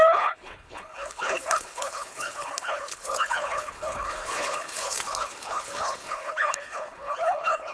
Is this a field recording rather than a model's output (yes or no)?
no